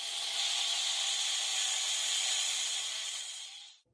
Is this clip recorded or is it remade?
remade